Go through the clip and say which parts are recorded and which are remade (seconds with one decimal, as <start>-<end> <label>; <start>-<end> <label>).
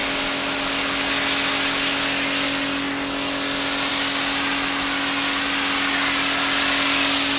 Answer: 0.0-7.4 recorded